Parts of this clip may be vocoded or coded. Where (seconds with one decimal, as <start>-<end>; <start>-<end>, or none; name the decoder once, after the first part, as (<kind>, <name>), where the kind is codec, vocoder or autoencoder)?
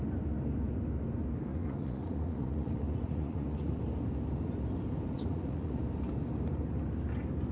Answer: 1.5-3.8 (vocoder, Vocos); 5.1-5.8